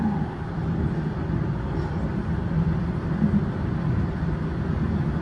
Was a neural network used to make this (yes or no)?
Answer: no